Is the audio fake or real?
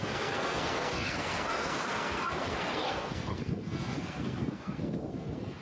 fake